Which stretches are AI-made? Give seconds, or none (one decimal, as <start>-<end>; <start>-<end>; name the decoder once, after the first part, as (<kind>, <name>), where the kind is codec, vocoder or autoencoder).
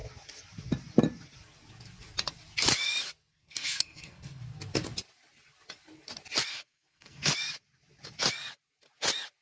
3.3-4.4 (codec, SNAC); 6.5-7.3